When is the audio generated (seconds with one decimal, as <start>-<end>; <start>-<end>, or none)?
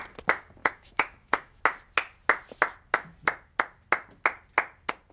0.6-1.6